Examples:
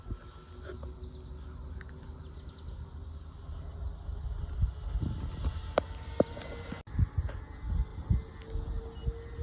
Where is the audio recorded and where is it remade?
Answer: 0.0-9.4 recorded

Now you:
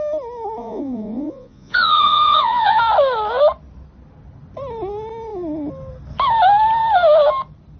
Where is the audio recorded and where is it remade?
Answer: 0.0-0.6 recorded; 0.6-2.8 remade; 2.8-7.8 recorded

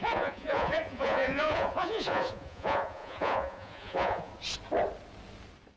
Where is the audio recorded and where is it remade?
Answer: 0.0-4.3 remade; 4.3-5.8 recorded

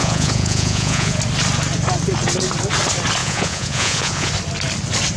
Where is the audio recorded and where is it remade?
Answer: 0.0-1.2 remade; 1.2-3.2 recorded; 3.2-4.3 remade; 4.3-5.2 recorded